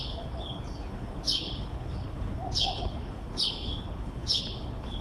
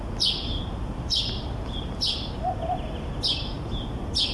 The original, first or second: second